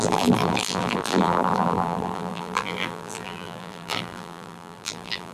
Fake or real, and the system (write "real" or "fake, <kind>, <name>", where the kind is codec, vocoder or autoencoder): fake, vocoder, BigVGAN v2